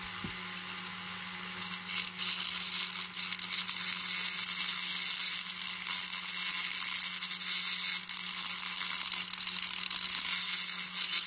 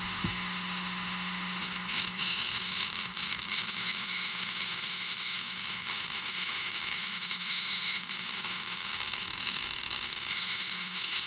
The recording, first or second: first